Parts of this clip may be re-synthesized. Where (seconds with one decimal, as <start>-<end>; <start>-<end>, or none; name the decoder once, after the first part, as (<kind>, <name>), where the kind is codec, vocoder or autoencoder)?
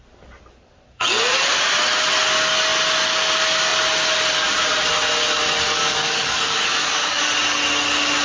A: 5.8-7.2 (codec, DAC)